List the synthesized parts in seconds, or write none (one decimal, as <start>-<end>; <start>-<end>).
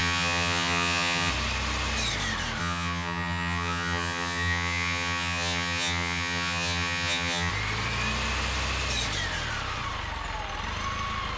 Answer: 0.0-1.3; 2.6-7.5